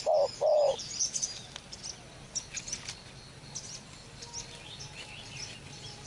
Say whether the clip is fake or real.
real